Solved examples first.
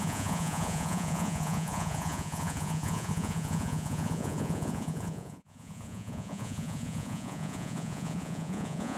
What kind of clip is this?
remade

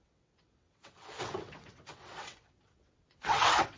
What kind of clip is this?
remade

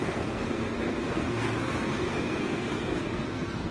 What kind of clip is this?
remade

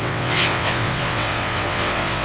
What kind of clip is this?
remade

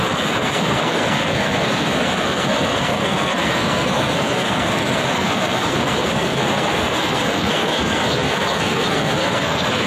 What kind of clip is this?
remade